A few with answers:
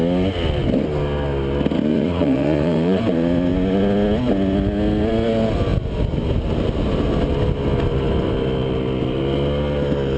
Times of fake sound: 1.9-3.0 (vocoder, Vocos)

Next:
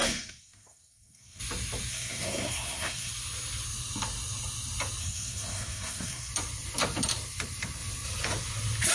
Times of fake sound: 0.0-1.4 (codec, SNAC); 1.9-3.1; 5.0-6.3

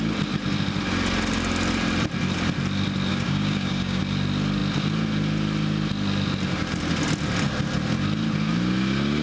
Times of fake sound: 3.1-4.0 (codec, DAC)

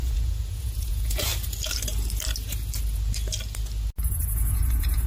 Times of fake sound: 0.0-1.3 (vocoder, Vocos); 4.1-5.1